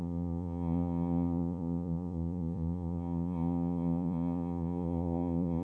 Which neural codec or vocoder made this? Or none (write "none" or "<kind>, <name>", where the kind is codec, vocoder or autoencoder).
vocoder, Vocos